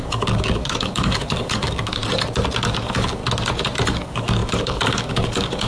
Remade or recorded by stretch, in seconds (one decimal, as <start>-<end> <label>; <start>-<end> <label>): 0.0-2.0 remade; 2.0-2.7 recorded; 2.7-3.2 remade; 3.2-3.9 recorded; 3.9-5.7 remade